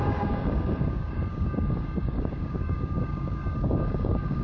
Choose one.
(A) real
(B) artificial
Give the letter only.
B